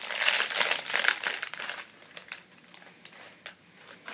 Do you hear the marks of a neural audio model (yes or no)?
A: no